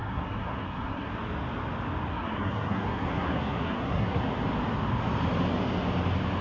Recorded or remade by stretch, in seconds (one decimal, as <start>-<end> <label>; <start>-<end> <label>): 0.0-1.1 remade; 1.1-2.1 recorded; 2.1-4.2 remade; 4.2-6.4 recorded